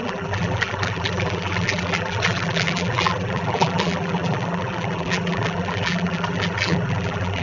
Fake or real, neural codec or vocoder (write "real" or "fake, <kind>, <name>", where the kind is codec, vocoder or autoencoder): fake, vocoder, BigVGAN v2